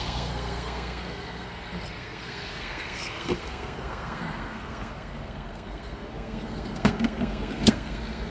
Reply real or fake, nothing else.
fake